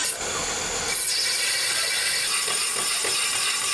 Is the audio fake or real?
real